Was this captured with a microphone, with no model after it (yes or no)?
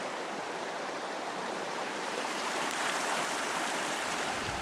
no